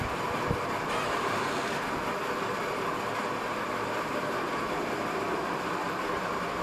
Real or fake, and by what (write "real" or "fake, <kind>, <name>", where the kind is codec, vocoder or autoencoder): fake, vocoder, BigVGAN v2